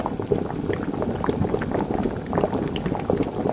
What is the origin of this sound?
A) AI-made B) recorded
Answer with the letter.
B